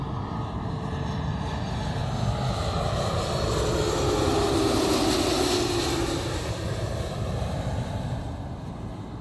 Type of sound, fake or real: real